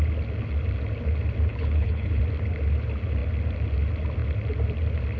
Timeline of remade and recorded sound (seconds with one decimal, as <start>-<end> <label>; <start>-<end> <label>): 0.0-1.5 recorded; 1.5-2.2 remade; 2.2-5.2 recorded